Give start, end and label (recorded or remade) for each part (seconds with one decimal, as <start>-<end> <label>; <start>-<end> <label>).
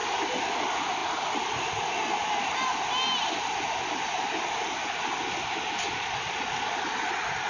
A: 0.0-7.5 recorded